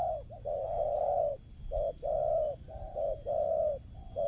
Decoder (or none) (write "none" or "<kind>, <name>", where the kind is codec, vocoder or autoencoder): none